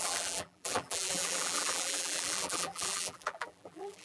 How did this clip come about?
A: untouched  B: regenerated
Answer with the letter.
B